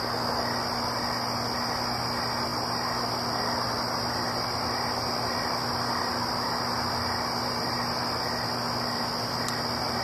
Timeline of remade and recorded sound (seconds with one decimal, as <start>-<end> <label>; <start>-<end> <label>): 0.0-10.0 recorded